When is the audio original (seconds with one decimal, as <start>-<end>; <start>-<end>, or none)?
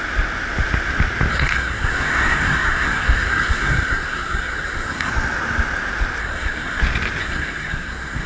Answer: 0.0-1.3; 5.1-6.2; 6.8-7.2